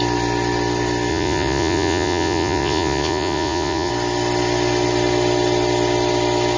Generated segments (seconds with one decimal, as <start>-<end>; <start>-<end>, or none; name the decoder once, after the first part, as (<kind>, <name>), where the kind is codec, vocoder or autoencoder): 1.1-3.9 (vocoder, Vocos)